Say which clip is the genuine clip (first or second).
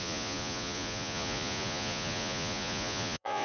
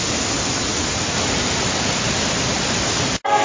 second